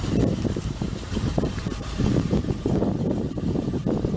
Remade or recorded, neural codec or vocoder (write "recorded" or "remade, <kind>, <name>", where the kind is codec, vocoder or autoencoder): remade, vocoder, BigVGAN v2